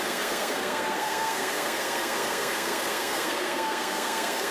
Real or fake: fake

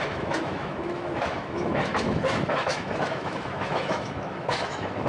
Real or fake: fake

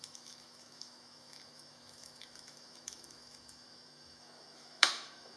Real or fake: fake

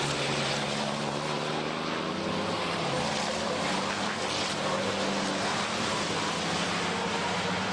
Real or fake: real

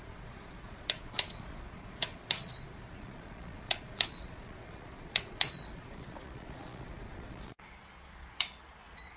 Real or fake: fake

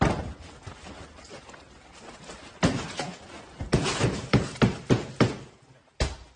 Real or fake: real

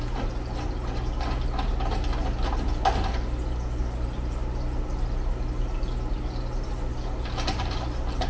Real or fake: real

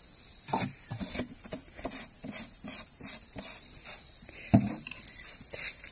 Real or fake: real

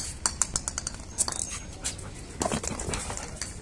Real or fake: real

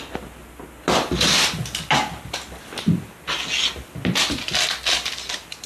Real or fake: real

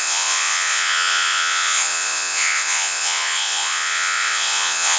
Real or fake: fake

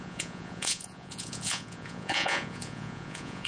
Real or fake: fake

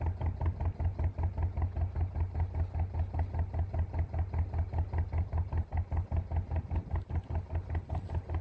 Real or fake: real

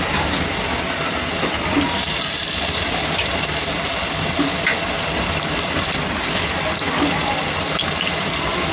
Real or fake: real